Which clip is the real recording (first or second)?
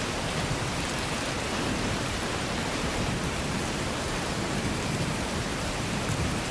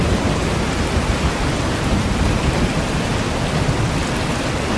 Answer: second